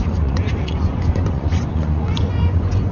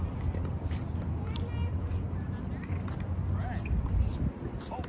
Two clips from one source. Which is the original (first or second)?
second